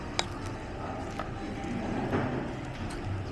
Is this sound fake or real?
real